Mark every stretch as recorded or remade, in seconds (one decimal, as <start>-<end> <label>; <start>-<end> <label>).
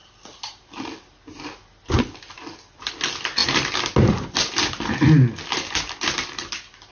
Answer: 0.0-6.9 recorded